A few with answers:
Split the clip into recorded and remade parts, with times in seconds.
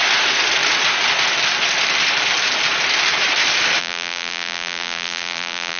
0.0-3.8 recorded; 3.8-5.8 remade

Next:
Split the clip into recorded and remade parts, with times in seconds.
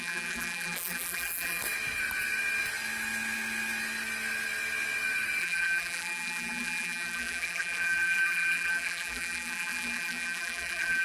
0.0-1.6 remade; 1.6-5.4 recorded; 5.4-11.0 remade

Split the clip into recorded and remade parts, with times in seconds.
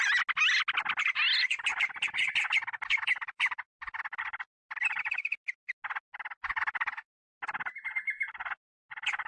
0.0-9.3 recorded